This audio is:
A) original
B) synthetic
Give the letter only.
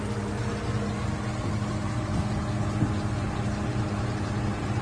A